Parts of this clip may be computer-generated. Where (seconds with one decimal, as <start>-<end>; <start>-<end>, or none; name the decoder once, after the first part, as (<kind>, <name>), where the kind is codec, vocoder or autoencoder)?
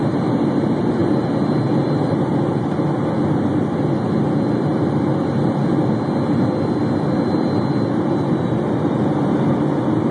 none